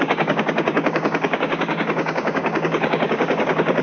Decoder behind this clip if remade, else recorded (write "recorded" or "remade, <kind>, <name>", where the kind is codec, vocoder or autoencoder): remade, codec, DAC